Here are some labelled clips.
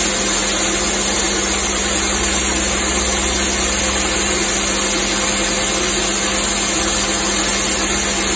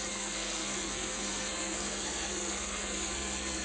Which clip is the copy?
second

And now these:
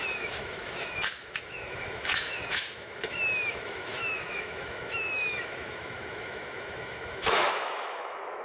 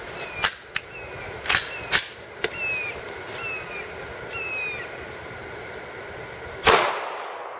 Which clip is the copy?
first